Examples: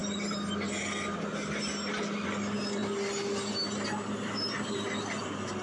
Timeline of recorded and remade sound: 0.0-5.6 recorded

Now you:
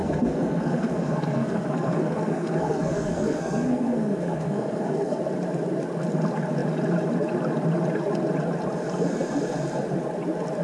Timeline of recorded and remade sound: 0.0-5.2 remade; 5.2-10.6 recorded

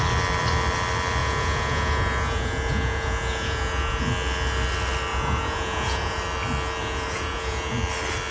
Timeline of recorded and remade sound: 0.0-1.2 recorded; 1.2-4.0 remade; 4.0-5.1 recorded; 5.1-6.2 remade; 6.2-6.8 recorded; 6.8-7.7 remade; 7.7-8.3 recorded

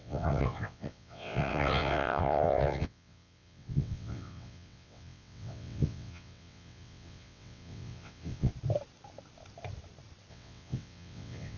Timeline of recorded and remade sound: 0.0-8.5 remade; 8.5-10.3 recorded; 10.3-11.6 remade

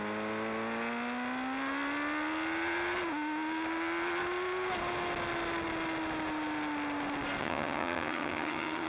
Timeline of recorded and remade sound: 0.0-7.4 recorded; 7.4-8.9 remade

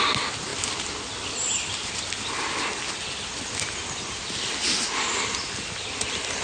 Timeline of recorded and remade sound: 0.0-6.4 recorded

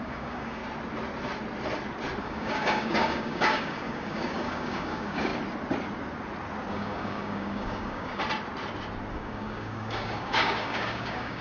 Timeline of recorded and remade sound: 0.0-0.6 remade; 0.6-2.2 recorded; 2.2-5.3 remade; 5.3-6.7 recorded; 6.7-8.2 remade; 8.2-9.1 recorded; 9.1-11.4 remade

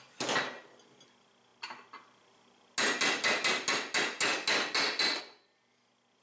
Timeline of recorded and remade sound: 0.0-6.2 recorded